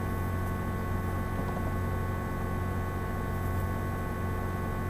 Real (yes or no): yes